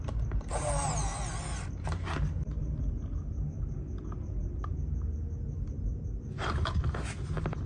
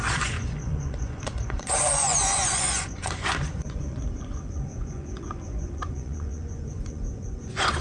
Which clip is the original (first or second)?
first